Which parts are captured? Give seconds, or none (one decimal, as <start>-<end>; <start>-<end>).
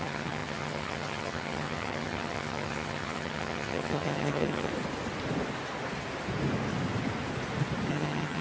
4.7-7.9